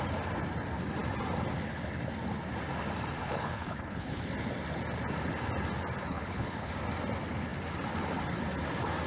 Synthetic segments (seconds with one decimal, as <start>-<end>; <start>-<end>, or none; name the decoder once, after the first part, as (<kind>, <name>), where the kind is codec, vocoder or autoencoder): 3.2-4.2 (codec, HILCodec); 6.1-6.7